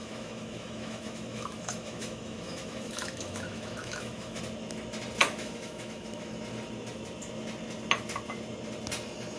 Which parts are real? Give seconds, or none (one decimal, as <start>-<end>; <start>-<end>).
4.4-5.2; 6.3-9.4